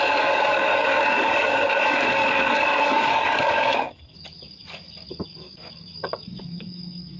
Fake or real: fake